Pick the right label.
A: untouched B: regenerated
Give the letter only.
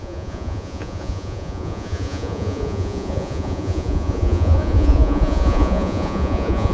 B